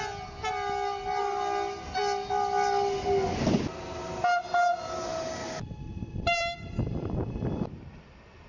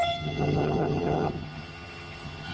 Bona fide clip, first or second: first